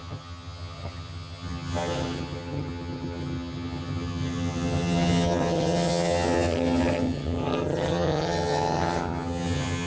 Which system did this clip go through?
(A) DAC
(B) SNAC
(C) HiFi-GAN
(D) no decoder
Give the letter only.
C